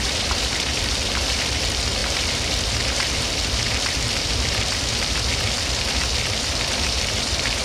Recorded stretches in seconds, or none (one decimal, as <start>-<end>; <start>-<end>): none